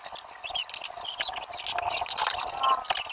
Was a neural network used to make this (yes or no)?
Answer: no